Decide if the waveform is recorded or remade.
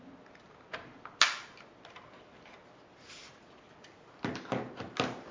recorded